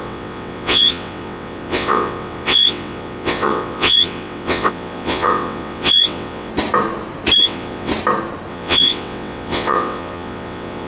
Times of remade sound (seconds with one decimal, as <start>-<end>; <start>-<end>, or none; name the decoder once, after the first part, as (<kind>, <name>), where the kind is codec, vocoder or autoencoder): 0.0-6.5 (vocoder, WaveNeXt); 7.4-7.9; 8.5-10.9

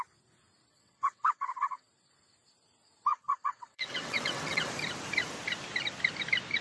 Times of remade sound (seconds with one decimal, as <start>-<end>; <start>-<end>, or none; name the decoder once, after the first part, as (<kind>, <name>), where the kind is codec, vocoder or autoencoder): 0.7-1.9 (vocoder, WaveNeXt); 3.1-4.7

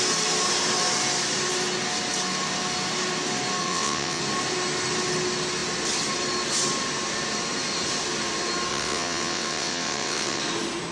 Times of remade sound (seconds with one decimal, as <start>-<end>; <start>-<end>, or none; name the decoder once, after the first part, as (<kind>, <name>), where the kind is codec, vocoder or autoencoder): 3.6-4.2 (vocoder, WaveNeXt); 8.7-10.4

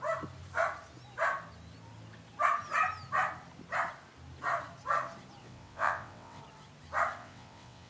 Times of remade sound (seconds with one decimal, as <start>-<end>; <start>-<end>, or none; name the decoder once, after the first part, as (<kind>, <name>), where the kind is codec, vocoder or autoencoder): 5.4-6.4 (vocoder, WaveNeXt); 7.2-7.9